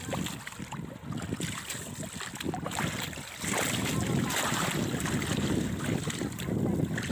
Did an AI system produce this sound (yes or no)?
no